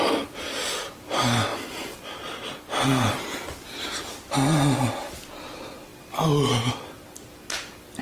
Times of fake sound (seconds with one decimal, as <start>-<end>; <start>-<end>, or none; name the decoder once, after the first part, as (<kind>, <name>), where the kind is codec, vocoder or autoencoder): none